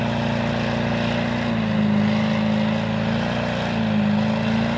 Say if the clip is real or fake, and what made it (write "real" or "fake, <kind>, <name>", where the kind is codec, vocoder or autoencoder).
real